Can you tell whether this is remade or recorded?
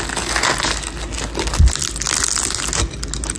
recorded